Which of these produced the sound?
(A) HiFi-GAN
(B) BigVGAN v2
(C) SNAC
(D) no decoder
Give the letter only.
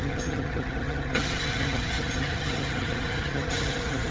A